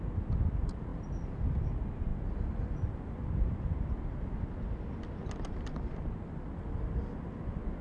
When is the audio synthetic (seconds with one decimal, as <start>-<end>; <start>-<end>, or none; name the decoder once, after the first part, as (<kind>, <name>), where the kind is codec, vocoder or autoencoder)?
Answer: none